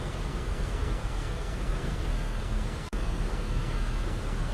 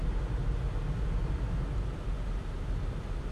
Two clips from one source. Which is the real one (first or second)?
second